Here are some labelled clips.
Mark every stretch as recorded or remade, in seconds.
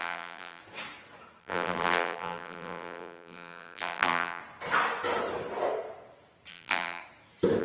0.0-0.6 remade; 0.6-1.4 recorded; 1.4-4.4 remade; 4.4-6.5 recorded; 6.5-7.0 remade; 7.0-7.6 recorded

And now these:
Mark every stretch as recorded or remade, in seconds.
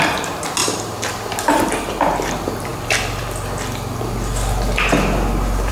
0.0-5.7 recorded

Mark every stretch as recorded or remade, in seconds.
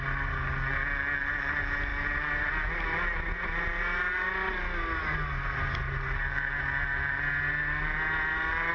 0.0-8.7 recorded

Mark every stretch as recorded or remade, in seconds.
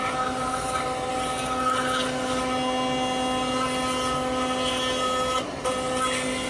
0.0-0.4 recorded; 0.4-1.1 remade; 1.1-6.5 recorded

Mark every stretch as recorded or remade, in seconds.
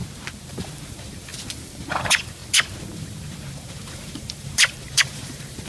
0.0-0.5 recorded; 0.5-1.3 remade; 1.3-2.0 recorded; 2.0-2.4 remade; 2.4-3.0 recorded; 3.0-5.7 remade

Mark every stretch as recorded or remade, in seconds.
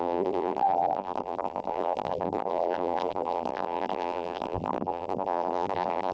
0.0-6.1 remade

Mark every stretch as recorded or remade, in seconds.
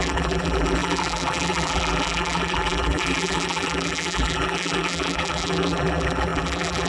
0.0-6.9 remade